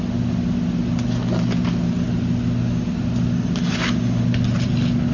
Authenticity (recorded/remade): recorded